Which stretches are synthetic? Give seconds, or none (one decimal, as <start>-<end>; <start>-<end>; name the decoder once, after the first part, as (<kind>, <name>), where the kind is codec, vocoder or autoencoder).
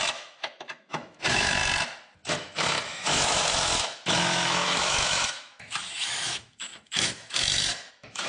0.0-1.6 (autoencoder, DAC-VAE); 2.3-8.3